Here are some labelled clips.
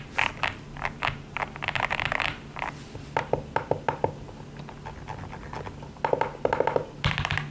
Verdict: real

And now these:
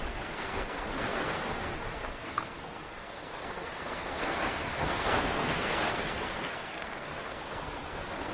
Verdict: fake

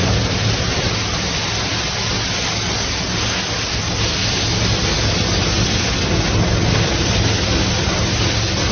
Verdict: real